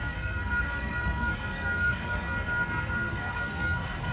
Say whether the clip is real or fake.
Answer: fake